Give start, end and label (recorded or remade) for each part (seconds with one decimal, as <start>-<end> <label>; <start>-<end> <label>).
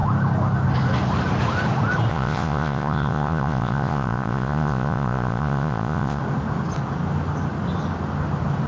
0.0-2.1 recorded; 2.1-6.2 remade; 6.2-8.7 recorded